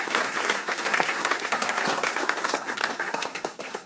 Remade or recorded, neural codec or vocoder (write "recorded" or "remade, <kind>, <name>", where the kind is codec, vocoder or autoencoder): remade, codec, SNAC